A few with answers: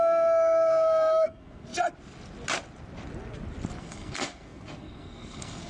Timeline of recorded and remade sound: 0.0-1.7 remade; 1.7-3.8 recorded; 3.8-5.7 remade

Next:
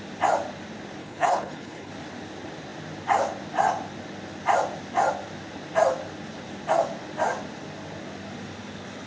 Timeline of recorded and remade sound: 0.0-1.0 recorded; 1.0-1.9 remade; 1.9-9.1 recorded

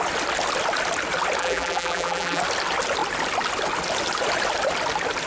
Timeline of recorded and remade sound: 0.0-1.4 recorded; 1.4-2.4 remade; 2.4-5.3 recorded

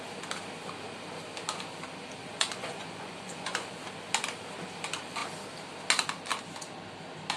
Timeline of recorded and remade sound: 0.0-2.2 recorded; 2.2-3.7 remade; 3.7-7.4 recorded

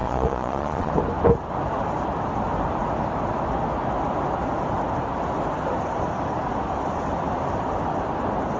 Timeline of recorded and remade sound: 0.0-0.9 remade; 0.9-8.6 recorded

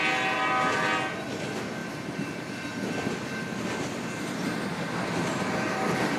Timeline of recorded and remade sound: 0.0-1.8 recorded; 1.8-2.5 remade; 2.5-6.2 recorded